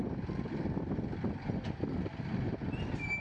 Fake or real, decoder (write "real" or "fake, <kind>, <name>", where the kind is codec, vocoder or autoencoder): real